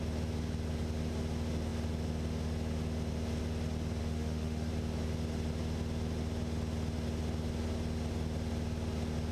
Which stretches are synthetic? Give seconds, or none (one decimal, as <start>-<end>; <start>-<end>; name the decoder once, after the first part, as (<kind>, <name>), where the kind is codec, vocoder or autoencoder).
4.0-4.7 (autoencoder, DAC-VAE)